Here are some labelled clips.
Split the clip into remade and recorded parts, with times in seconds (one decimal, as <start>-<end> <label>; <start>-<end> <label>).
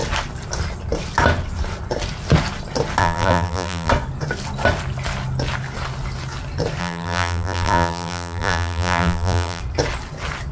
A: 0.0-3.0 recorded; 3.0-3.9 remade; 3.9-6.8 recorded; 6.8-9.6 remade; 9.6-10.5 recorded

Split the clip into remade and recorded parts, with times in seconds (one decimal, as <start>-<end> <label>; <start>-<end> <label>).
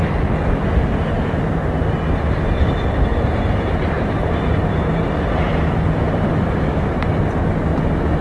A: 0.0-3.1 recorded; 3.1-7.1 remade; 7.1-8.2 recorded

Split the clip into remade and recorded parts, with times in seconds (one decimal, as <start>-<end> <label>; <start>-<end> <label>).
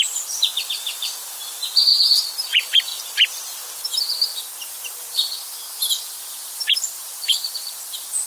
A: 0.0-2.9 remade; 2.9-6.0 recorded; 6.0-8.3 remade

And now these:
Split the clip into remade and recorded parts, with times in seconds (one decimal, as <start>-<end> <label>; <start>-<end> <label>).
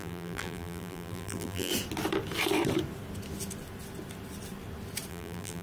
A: 0.0-1.7 remade; 1.7-5.1 recorded; 5.1-5.6 remade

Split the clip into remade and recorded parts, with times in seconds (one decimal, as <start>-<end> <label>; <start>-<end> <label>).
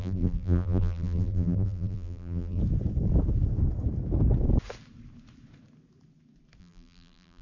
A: 0.0-2.6 remade; 2.6-6.6 recorded; 6.6-7.4 remade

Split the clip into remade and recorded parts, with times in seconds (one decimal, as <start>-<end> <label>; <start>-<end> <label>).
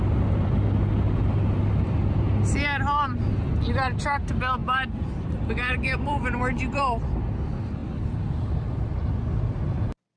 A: 0.0-4.6 recorded; 4.6-7.1 remade; 7.1-10.2 recorded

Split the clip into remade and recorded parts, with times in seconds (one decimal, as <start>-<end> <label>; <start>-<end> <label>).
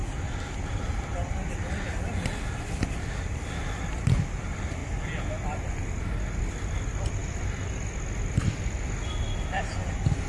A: 0.0-10.3 recorded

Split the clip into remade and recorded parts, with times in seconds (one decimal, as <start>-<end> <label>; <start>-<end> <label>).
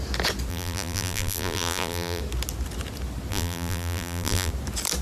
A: 0.0-0.5 recorded; 0.5-2.2 remade; 2.2-3.3 recorded; 3.3-4.5 remade; 4.5-5.0 recorded